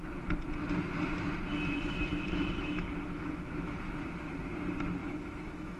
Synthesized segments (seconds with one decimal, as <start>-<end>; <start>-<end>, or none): 1.9-3.7; 5.0-5.8